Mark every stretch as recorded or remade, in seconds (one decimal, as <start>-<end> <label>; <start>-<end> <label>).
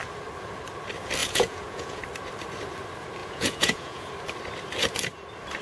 0.0-1.2 recorded; 1.2-2.0 remade; 2.0-3.2 recorded; 3.2-4.1 remade; 4.1-5.6 recorded